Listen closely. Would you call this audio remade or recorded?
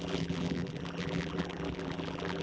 remade